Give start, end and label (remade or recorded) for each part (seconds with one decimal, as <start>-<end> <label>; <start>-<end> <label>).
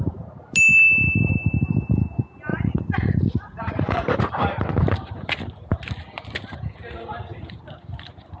0.0-2.5 recorded; 2.5-4.0 remade; 4.0-8.4 recorded